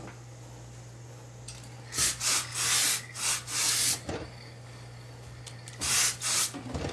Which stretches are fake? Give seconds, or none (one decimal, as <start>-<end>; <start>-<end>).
none